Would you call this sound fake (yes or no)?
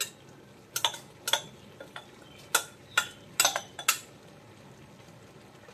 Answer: no